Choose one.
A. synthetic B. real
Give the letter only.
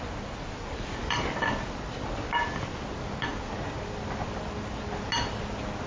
B